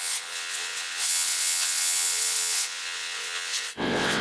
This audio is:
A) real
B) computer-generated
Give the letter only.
B